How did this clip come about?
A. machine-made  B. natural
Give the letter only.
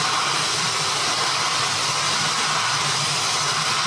A